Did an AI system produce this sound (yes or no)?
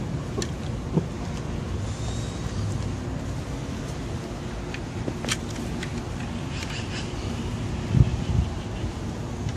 no